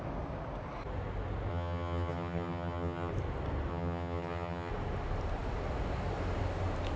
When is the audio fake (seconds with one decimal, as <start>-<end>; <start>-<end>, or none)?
1.5-3.1; 3.7-4.7